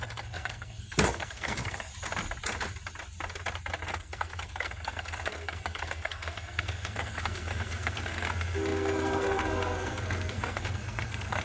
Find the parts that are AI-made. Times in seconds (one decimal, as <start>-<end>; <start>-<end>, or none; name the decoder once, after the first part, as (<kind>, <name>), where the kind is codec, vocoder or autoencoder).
0.0-1.9 (codec, SNAC); 3.9-11.4